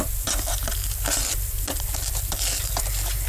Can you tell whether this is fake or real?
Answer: real